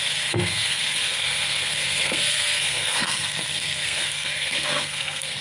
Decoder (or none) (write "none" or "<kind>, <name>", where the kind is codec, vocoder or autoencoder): codec, SNAC